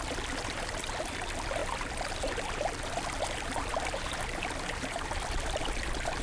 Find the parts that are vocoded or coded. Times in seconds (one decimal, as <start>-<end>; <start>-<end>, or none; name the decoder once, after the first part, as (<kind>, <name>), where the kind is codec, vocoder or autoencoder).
none